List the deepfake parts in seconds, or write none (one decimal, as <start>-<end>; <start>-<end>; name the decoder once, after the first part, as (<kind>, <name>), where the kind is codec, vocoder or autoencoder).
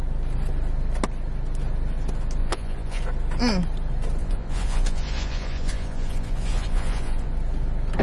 2.4-3.0 (vocoder, Vocos); 4.2-7.3